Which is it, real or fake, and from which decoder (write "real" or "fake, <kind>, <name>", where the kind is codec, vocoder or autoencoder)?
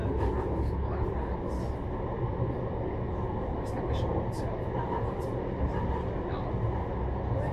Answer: real